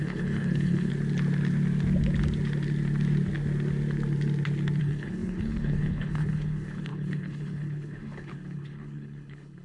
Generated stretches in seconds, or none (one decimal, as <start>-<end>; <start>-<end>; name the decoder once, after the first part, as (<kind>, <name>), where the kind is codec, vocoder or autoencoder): 0.0-0.9 (codec, HILCodec); 4.8-9.6